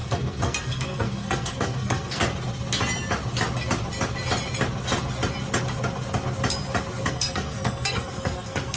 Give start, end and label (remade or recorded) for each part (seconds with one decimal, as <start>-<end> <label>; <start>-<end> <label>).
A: 0.0-2.2 remade; 2.2-7.1 recorded; 7.1-8.8 remade